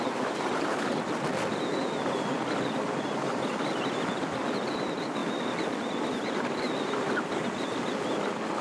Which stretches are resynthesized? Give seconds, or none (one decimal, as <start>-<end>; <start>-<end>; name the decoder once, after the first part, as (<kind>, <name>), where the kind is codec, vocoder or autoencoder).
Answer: none